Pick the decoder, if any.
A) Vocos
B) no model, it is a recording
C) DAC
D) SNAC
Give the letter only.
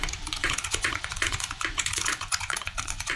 A